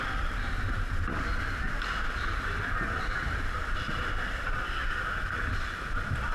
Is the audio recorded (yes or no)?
no